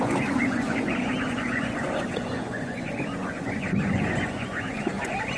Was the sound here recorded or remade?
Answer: remade